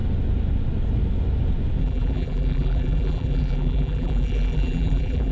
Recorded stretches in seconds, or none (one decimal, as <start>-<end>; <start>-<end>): 0.0-1.8